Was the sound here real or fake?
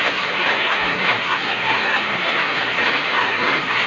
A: fake